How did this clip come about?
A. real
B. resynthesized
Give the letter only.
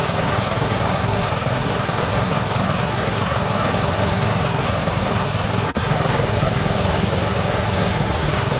B